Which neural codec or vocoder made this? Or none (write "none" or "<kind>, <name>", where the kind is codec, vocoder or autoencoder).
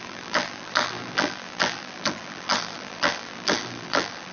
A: vocoder, BigVGAN v2